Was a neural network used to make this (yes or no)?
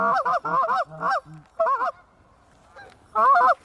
no